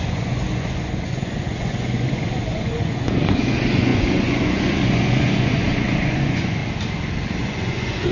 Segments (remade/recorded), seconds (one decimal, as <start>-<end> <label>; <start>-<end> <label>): 0.0-6.6 remade; 6.6-7.4 recorded; 7.4-8.1 remade